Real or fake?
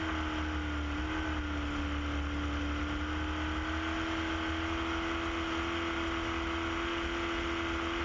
real